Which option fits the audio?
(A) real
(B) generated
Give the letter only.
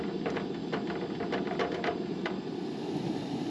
A